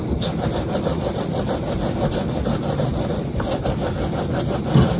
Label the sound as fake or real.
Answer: real